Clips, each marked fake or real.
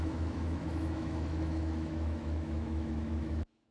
fake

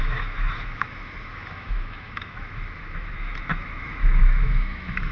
fake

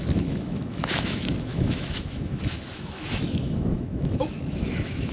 fake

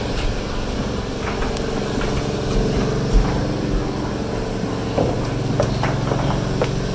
real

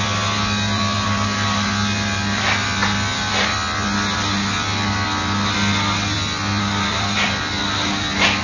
real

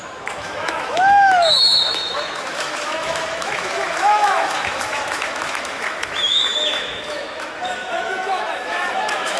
fake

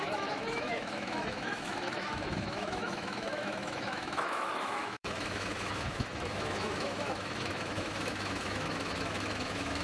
fake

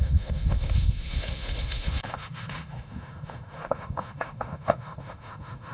fake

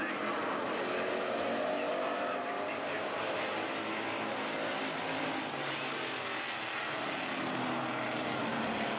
real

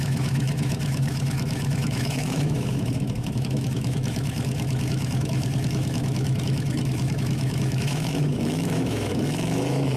fake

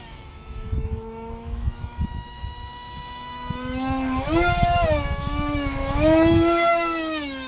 fake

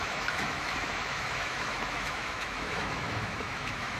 fake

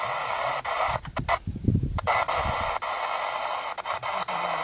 real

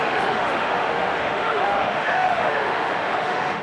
fake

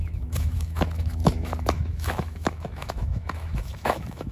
fake